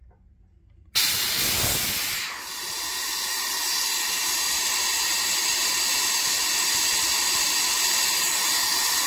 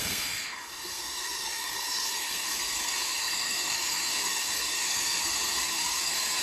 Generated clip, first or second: second